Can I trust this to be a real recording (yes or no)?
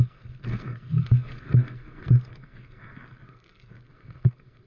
no